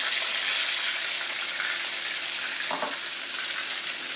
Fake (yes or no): no